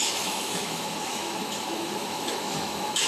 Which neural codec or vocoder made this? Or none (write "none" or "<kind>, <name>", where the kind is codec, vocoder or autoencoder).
autoencoder, DAC-VAE